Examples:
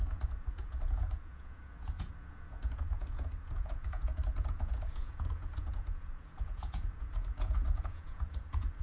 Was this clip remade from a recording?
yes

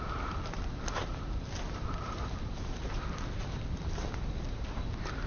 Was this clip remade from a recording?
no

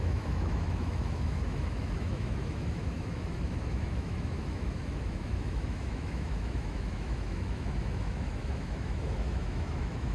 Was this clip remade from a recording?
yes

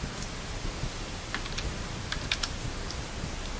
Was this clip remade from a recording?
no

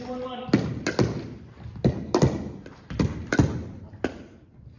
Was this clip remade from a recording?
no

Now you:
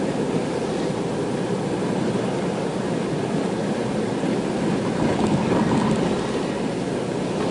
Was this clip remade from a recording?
yes